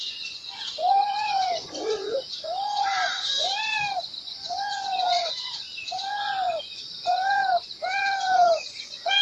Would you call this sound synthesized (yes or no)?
yes